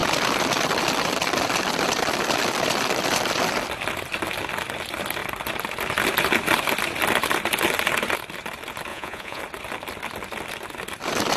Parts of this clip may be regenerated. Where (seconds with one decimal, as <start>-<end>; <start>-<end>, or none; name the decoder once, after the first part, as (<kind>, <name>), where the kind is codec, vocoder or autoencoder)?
8.9-9.4 (vocoder, Vocos)